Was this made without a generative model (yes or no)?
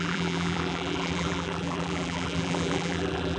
no